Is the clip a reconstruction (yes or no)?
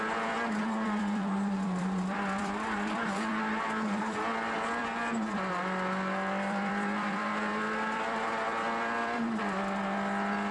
yes